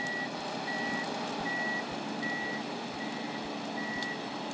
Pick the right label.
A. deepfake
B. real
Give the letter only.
B